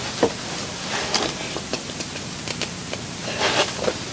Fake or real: real